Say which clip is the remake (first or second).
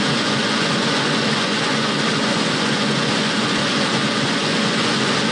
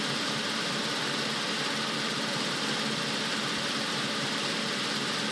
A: first